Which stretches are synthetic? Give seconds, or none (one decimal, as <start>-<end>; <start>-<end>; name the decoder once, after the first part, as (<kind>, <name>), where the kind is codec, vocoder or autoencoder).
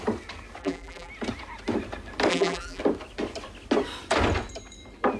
0.6-1.1 (vocoder, BigVGAN v2); 2.3-2.8